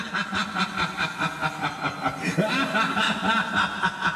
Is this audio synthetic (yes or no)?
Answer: no